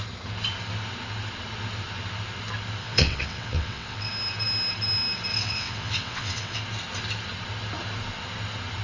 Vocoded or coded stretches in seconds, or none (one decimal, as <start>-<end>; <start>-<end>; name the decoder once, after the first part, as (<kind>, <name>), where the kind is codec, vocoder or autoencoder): 2.8-4.1 (vocoder, WaveNeXt); 5.3-6.6